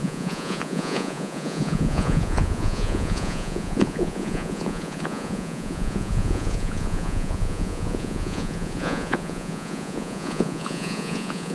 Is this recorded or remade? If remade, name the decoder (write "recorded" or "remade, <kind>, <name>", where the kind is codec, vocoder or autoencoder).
remade, vocoder, Vocos